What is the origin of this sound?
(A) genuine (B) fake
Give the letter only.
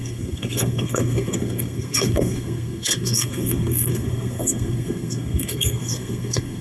B